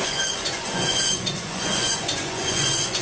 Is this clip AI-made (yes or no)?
yes